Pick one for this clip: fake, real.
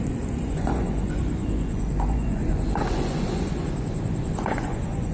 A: fake